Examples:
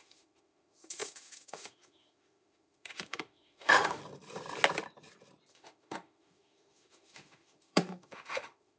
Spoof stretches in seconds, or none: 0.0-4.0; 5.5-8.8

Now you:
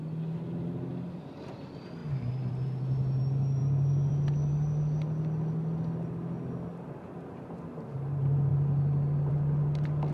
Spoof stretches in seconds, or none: none

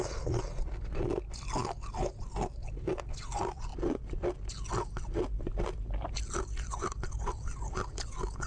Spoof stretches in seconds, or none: none